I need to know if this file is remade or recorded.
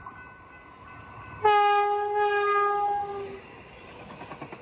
recorded